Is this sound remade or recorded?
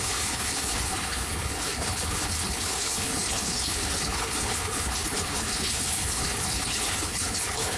remade